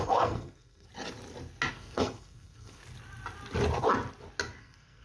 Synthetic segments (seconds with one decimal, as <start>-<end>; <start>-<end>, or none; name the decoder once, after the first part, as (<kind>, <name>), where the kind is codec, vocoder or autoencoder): 0.0-0.9 (codec, SNAC); 1.7-2.8; 4.6-5.0